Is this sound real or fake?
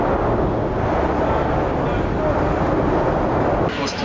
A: real